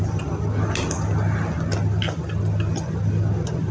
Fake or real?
real